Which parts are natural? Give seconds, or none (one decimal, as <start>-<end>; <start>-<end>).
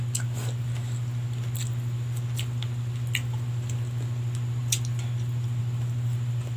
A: 0.0-6.6